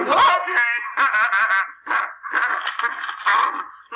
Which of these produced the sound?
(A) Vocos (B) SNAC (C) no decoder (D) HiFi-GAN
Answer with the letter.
C